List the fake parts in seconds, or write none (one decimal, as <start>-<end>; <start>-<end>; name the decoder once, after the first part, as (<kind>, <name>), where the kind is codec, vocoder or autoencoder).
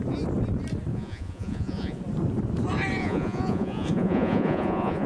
0.9-2.0 (vocoder, Vocos); 3.0-5.1